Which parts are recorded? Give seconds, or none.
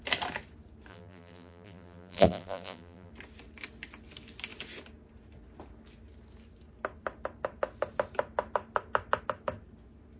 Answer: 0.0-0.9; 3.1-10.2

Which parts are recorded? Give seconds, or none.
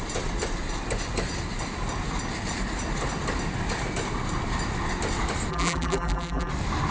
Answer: 0.0-5.5; 6.5-6.9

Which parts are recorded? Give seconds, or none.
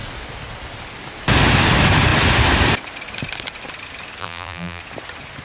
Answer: 0.0-4.2; 4.8-5.4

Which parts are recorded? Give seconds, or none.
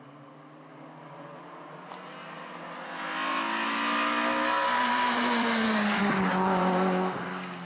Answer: 0.0-4.6; 6.0-7.6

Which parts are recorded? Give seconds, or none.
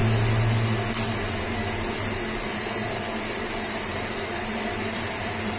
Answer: 0.0-3.4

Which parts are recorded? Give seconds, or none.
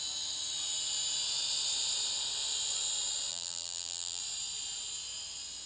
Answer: 0.0-3.3; 4.2-5.7